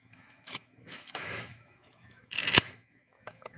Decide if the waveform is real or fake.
fake